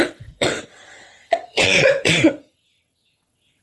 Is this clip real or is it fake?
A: fake